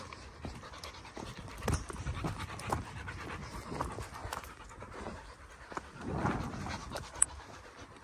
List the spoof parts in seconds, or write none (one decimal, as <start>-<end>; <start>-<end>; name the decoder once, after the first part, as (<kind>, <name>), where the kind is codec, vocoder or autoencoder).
none